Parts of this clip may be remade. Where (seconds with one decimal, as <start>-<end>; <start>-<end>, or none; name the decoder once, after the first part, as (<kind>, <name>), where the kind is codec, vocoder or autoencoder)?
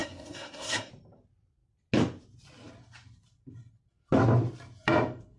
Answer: 0.0-0.9 (codec, SNAC)